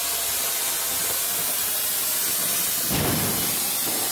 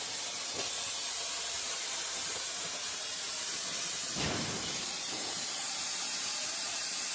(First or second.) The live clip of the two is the first